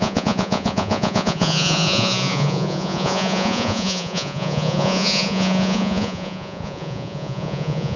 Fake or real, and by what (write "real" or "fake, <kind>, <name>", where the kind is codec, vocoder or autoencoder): fake, vocoder, Vocos